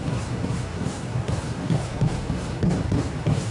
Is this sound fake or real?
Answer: fake